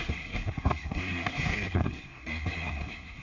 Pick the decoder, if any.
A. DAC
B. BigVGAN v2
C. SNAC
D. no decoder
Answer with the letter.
C